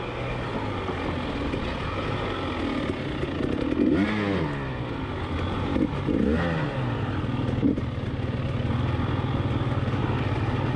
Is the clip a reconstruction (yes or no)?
no